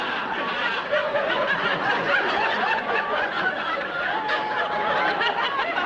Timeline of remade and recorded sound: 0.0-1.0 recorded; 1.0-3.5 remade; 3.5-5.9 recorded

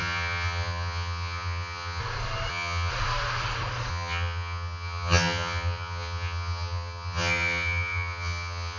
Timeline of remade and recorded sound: 0.0-2.0 remade; 2.0-2.5 recorded; 2.5-2.9 remade; 2.9-3.9 recorded; 3.9-8.8 remade

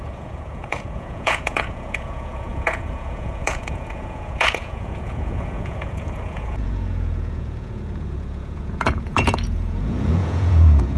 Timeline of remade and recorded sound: 0.0-11.0 remade

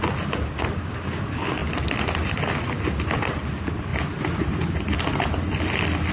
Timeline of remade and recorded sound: 0.0-1.6 recorded; 1.6-3.2 remade; 3.2-3.9 recorded; 3.9-6.1 remade

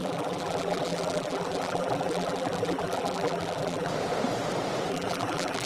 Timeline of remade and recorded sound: 0.0-3.9 remade; 3.9-4.9 recorded; 4.9-5.7 remade